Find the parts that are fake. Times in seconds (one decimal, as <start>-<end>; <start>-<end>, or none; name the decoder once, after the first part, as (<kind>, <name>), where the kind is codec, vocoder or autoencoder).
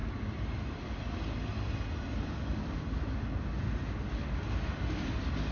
none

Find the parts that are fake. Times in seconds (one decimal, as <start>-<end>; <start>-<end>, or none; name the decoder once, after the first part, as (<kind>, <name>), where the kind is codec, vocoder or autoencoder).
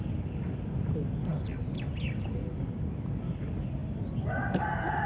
none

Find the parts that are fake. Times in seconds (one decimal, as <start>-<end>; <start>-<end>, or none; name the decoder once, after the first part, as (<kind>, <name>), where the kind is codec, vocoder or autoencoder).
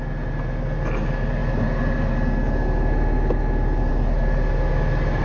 none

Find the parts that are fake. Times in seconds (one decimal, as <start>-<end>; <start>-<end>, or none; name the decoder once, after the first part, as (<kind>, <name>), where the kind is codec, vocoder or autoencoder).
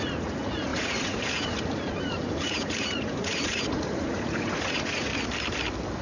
0.0-5.1 (vocoder, Vocos)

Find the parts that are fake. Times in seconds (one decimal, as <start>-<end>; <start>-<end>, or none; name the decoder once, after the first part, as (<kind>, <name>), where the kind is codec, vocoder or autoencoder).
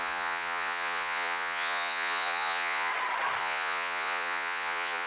0.0-2.9 (vocoder, Vocos); 3.4-5.1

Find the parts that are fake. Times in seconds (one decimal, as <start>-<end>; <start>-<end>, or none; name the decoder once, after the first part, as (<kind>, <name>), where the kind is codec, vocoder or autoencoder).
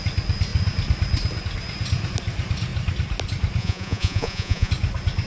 3.6-4.7 (vocoder, Vocos)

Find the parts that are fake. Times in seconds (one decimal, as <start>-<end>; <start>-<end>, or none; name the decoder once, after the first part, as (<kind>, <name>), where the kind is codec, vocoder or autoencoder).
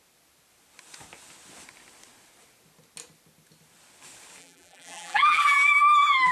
4.4-6.3 (vocoder, BigVGAN v2)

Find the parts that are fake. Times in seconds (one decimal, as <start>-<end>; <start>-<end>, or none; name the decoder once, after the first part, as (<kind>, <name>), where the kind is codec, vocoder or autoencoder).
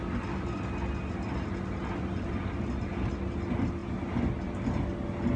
none